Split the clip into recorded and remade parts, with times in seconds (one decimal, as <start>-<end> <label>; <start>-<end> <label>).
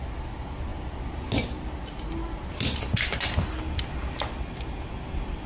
0.0-5.5 recorded